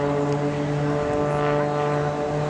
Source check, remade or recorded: recorded